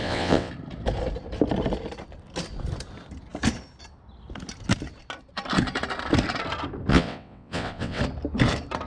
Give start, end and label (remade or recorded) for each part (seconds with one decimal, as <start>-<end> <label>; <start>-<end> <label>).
0.0-0.5 remade; 0.5-6.9 recorded; 6.9-8.0 remade; 8.0-8.9 recorded